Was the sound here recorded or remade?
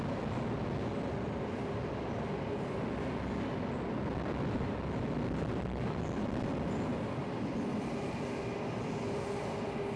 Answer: recorded